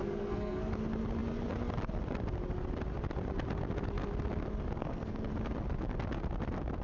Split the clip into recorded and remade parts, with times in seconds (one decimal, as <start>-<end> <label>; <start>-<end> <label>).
0.0-0.7 remade; 0.7-4.8 recorded; 4.8-5.3 remade; 5.3-6.8 recorded

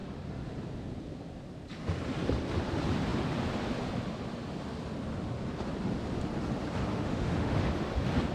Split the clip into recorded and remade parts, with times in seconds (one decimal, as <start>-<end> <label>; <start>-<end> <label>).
0.0-6.9 recorded; 6.9-7.6 remade; 7.6-8.3 recorded